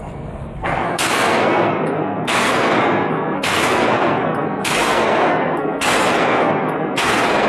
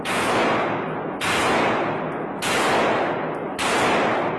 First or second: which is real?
second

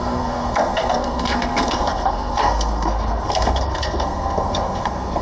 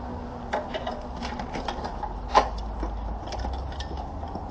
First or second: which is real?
second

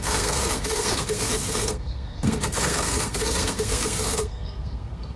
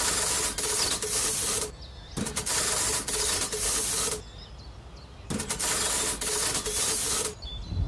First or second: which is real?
second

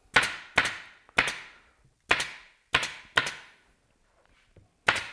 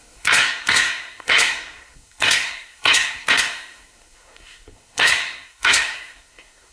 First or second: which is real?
first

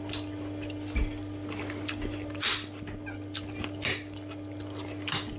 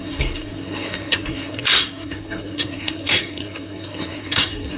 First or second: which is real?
first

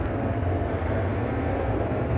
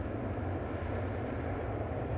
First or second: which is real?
second